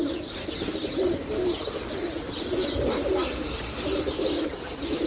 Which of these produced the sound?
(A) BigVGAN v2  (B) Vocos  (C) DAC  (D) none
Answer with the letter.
D